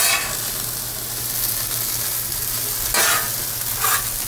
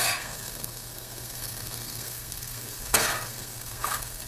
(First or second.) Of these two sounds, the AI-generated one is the second